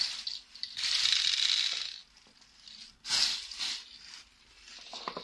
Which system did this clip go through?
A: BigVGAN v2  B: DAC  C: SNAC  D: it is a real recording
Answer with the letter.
D